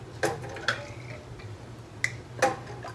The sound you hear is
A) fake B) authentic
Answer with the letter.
B